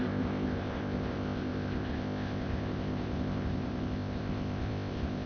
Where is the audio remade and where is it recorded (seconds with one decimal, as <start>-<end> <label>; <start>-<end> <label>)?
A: 0.0-5.3 remade